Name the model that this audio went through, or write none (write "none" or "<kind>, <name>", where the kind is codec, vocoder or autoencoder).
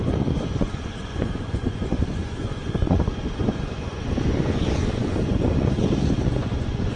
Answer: vocoder, Vocos